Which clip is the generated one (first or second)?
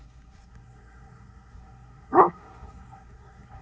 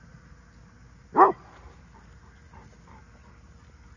first